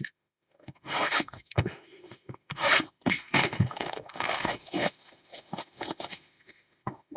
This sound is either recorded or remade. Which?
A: remade